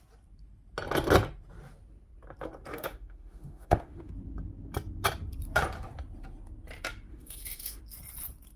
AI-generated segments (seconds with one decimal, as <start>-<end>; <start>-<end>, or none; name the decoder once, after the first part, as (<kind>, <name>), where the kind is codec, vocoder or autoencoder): 2.7-4.1 (autoencoder, DAC-VAE); 7.1-7.8